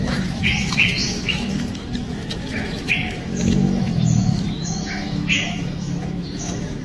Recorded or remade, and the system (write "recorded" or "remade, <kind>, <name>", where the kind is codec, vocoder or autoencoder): remade, autoencoder, DAC-VAE